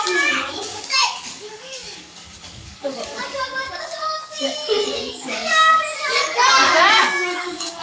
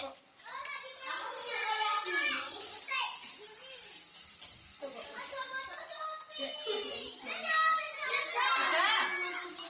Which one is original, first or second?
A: second